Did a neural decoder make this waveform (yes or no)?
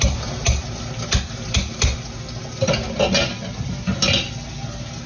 no